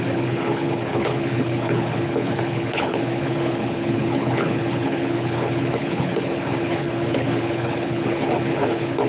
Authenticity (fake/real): fake